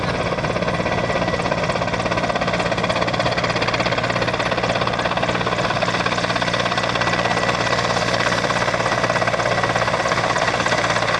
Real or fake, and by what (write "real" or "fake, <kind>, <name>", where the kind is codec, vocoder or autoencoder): real